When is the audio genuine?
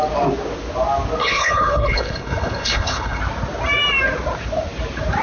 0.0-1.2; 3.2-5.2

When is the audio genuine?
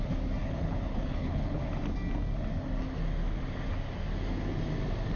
0.0-0.4; 1.6-5.2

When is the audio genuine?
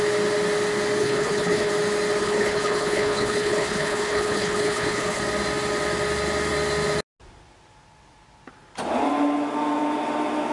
0.0-1.0; 1.7-2.2; 5.2-10.5